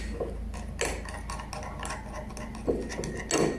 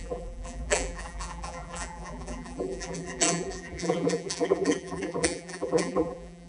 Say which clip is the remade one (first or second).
second